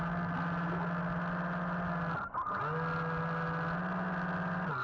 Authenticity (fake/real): real